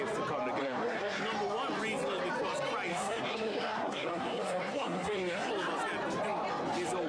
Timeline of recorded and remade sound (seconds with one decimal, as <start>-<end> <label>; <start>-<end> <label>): 0.0-0.6 recorded; 0.6-1.2 remade; 1.2-2.9 recorded; 2.9-5.5 remade; 5.5-7.1 recorded

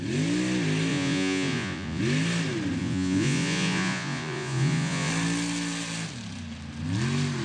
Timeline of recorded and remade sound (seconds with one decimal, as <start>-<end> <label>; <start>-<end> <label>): 0.0-0.9 recorded; 0.9-2.0 remade; 2.0-2.8 recorded; 2.8-5.1 remade; 5.1-7.4 recorded

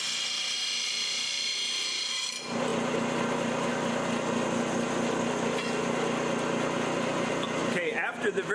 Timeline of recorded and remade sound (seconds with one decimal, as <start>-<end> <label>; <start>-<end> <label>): 0.0-8.5 recorded